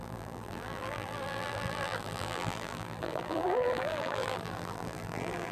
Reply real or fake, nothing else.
fake